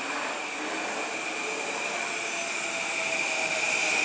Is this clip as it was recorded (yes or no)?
yes